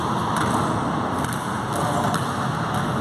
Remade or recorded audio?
recorded